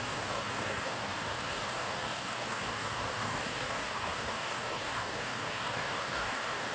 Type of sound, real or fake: fake